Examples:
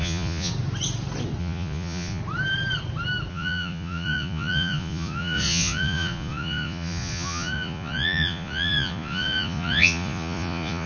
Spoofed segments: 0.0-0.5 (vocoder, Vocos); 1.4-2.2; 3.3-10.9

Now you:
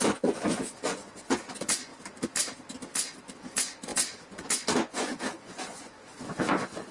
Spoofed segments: 0.0-1.9 (vocoder, Vocos); 3.4-6.9

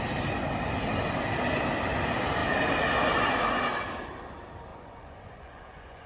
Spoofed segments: 4.7-6.1 (vocoder, Vocos)

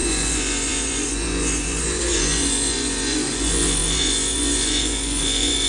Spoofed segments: 0.0-5.7 (vocoder, Vocos)

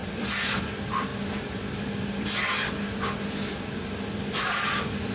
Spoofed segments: none

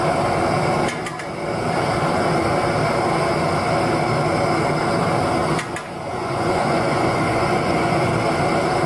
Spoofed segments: 6.1-8.1 (vocoder, Vocos)